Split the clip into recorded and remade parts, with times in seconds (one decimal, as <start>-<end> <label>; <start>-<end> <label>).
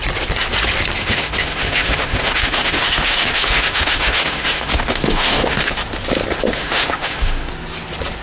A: 0.0-1.0 recorded; 1.0-5.7 remade; 5.7-6.4 recorded; 6.4-7.5 remade; 7.5-8.2 recorded